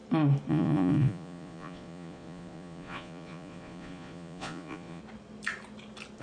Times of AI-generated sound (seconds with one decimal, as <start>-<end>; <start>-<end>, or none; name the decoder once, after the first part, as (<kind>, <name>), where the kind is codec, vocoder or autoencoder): 0.5-5.0 (vocoder, Vocos)